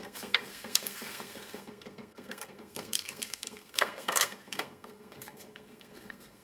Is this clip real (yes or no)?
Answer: no